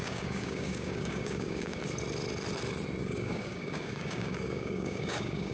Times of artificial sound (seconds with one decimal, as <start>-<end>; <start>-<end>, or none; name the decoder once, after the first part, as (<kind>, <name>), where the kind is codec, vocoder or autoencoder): 0.0-1.8 (codec, DAC); 3.0-5.5